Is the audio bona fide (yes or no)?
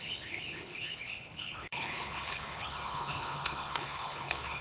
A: no